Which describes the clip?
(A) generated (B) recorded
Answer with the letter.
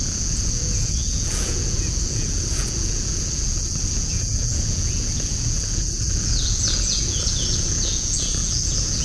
A